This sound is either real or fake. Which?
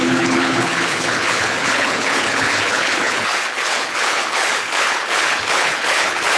fake